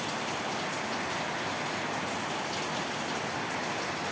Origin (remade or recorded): recorded